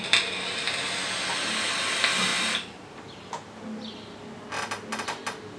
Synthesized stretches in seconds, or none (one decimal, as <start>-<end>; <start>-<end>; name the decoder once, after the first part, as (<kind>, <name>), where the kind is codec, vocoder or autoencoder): none